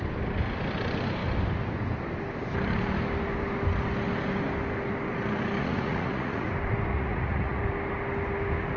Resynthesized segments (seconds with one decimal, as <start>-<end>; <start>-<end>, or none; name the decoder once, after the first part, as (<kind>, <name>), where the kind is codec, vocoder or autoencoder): 5.6-6.5 (vocoder, Vocos); 6.9-7.6